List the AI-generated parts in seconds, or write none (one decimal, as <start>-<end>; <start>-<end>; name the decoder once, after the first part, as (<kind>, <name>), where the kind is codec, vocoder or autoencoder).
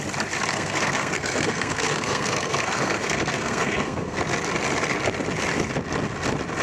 0.5-4.2 (codec, SNAC)